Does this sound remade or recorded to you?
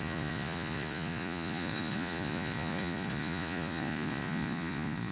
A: remade